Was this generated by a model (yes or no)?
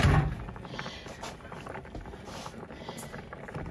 no